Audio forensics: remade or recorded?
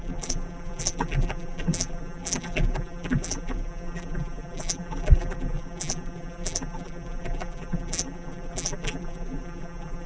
remade